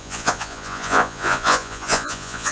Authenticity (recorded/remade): remade